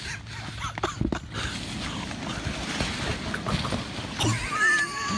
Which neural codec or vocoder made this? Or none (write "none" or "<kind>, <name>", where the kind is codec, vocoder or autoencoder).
none